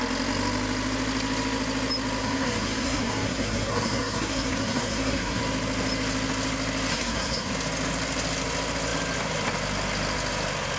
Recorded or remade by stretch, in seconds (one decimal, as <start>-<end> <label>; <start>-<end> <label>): 0.0-2.2 recorded; 2.2-5.4 remade; 5.4-6.9 recorded; 6.9-7.5 remade; 7.5-10.8 recorded